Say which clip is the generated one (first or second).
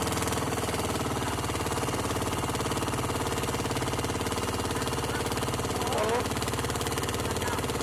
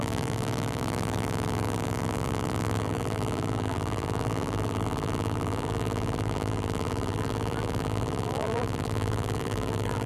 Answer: second